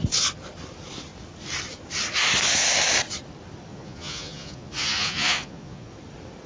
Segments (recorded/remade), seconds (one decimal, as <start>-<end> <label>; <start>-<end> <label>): 0.0-3.7 recorded; 3.7-5.9 remade; 5.9-6.5 recorded